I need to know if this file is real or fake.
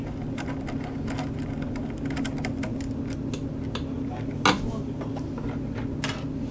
real